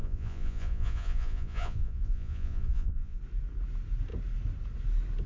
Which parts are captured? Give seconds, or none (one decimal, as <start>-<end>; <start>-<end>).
3.2-5.3